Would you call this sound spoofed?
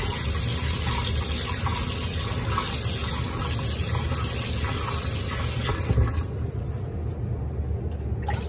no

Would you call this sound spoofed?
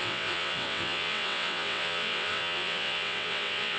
yes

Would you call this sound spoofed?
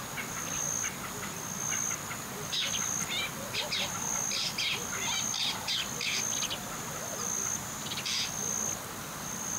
no